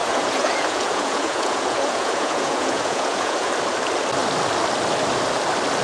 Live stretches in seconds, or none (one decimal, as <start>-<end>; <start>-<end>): 3.5-5.8

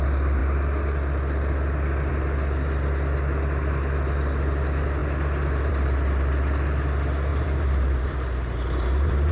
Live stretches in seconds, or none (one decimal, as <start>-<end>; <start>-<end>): 0.0-7.3

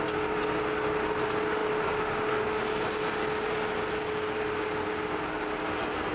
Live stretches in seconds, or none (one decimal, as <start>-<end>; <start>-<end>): 0.0-6.1

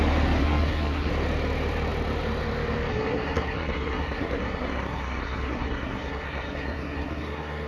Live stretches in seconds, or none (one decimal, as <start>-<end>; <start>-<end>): 0.0-0.4; 1.1-2.9

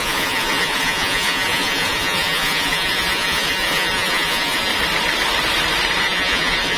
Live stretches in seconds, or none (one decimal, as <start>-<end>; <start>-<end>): 4.7-6.0

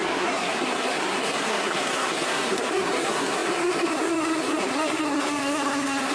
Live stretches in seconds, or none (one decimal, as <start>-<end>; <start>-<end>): none